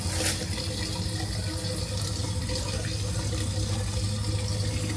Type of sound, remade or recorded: recorded